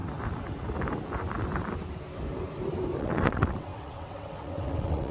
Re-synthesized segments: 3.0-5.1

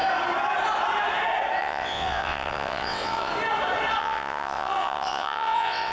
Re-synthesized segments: 1.6-3.3; 4.0-5.9

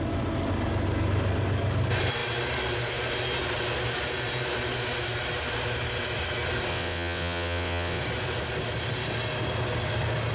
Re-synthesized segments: 6.7-8.0

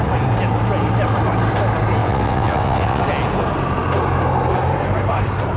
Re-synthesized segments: 2.0-3.0

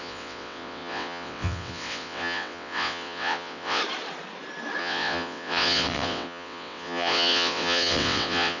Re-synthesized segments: 0.0-3.8; 4.8-8.6

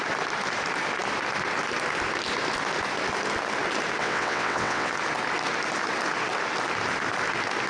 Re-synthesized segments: 4.0-4.9

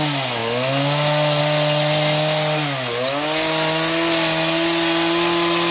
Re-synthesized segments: none

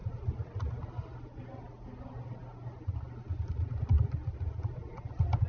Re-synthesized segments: none